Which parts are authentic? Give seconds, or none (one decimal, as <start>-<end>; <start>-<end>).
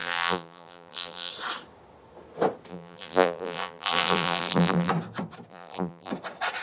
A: 1.3-2.7; 4.9-5.5; 6.1-6.6